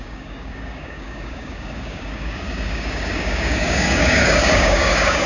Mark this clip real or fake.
fake